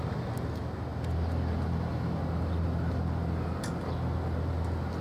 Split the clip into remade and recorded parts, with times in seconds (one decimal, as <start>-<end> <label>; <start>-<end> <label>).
0.0-5.0 recorded